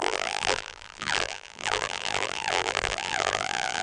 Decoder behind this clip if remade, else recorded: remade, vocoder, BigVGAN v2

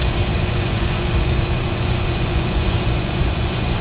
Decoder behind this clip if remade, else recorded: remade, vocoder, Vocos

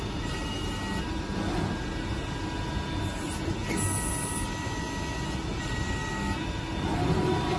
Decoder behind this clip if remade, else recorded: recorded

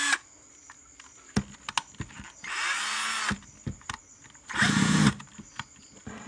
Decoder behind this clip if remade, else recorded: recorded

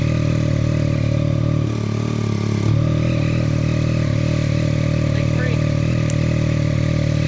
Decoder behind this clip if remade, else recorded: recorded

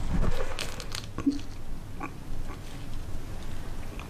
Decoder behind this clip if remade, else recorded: recorded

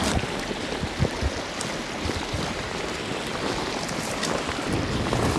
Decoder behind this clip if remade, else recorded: recorded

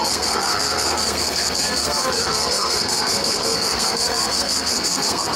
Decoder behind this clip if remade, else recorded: remade, codec, SNAC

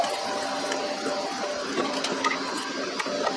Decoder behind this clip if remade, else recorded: recorded